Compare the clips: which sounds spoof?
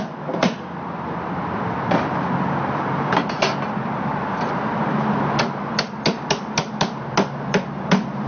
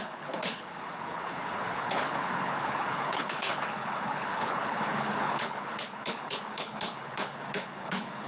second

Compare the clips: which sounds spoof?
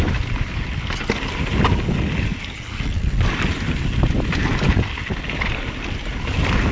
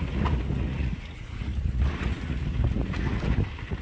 second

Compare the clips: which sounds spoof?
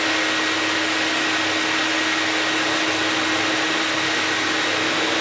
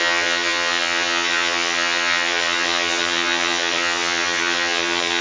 second